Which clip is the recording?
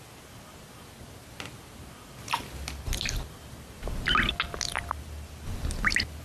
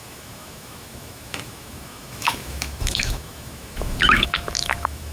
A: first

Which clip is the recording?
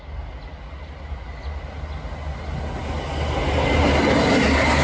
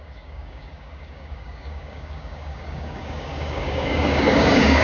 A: first